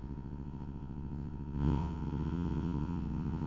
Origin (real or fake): fake